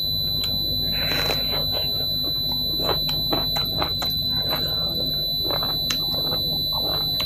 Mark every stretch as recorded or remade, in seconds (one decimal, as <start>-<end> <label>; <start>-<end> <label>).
0.0-3.6 recorded; 3.6-5.1 remade; 5.1-7.3 recorded